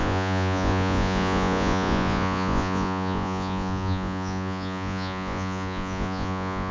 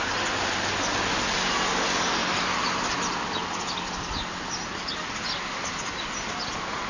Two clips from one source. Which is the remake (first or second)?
first